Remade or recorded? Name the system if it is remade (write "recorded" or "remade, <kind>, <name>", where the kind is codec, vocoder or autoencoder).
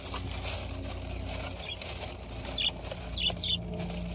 recorded